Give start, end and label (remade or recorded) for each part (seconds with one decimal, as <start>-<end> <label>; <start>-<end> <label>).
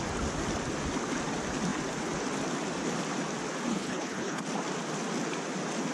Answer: 0.0-3.7 recorded; 3.7-4.4 remade; 4.4-5.9 recorded